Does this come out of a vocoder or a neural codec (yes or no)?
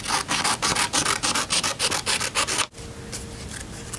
no